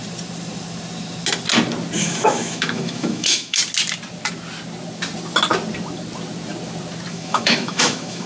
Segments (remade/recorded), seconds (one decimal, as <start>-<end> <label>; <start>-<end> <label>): 0.0-2.0 recorded; 2.0-3.6 remade; 3.6-7.1 recorded; 7.1-8.3 remade